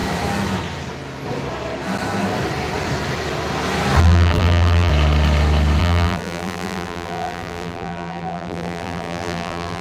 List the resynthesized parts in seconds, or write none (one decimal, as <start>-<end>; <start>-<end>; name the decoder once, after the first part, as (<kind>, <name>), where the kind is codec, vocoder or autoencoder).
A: 4.0-4.9 (vocoder, BigVGAN v2); 5.8-9.8